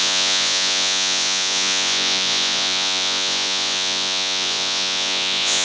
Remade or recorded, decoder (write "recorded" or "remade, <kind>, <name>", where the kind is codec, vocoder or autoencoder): remade, vocoder, Vocos